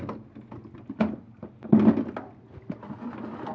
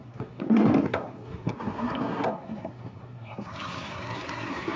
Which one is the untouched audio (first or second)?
first